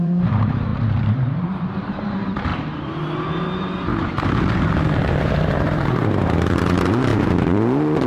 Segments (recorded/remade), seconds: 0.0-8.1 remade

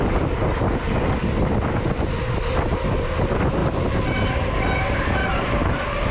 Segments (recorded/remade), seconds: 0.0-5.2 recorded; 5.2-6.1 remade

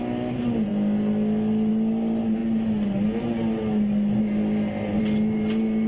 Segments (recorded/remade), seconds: 0.0-5.9 recorded

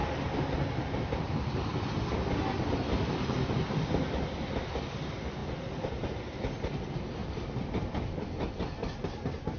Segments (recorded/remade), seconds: 0.0-9.6 recorded

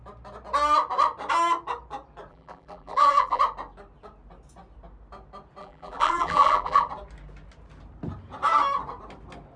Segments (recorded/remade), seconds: 0.0-2.3 recorded; 2.3-3.4 remade; 3.4-5.6 recorded; 5.6-6.9 remade; 6.9-9.6 recorded

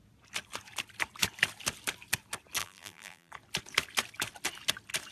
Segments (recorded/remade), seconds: 0.0-2.6 recorded; 2.6-3.3 remade; 3.3-5.1 recorded

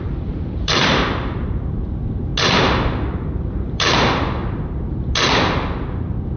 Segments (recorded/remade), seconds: 0.0-2.3 remade; 2.3-3.4 recorded; 3.4-4.4 remade; 4.4-6.4 recorded